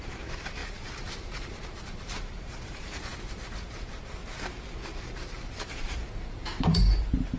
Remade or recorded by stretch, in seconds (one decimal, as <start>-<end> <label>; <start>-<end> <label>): 0.0-4.2 remade; 4.2-5.0 recorded; 5.0-7.4 remade